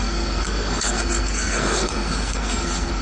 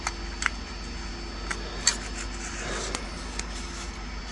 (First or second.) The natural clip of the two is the second